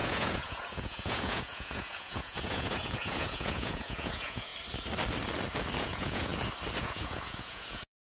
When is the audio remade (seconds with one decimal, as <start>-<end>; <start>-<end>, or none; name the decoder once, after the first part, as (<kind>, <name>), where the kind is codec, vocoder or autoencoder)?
0.0-4.5 (vocoder, Vocos); 5.8-6.3; 6.8-8.2